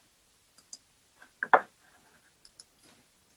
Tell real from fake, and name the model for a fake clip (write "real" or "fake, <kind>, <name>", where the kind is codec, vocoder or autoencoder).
real